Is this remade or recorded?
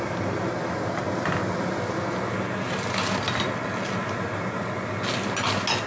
recorded